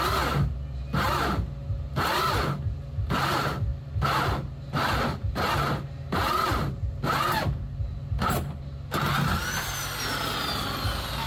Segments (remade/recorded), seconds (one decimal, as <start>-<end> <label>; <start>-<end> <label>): 0.0-11.3 recorded